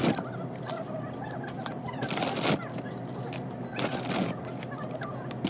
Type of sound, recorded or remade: recorded